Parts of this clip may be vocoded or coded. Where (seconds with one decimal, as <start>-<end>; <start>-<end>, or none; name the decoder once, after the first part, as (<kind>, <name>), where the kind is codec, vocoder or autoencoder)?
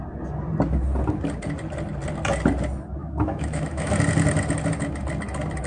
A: 3.0-3.9 (autoencoder, DAC-VAE)